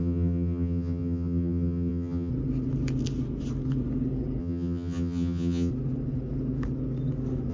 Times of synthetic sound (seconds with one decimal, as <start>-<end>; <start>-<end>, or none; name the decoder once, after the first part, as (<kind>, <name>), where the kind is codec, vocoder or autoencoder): 0.0-2.3 (vocoder, HiFi-GAN); 4.4-5.7